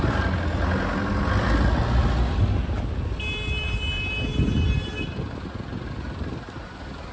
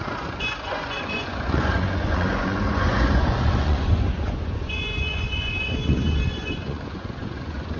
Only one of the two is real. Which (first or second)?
first